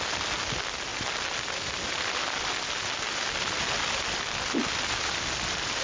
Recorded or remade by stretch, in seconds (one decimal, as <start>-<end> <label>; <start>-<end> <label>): 0.0-5.8 recorded